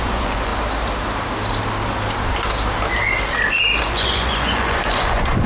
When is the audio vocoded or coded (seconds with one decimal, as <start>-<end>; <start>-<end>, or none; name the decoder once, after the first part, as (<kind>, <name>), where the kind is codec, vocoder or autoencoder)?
0.0-0.5 (vocoder, Vocos); 3.8-5.5